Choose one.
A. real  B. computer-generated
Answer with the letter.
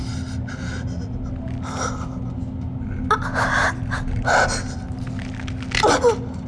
A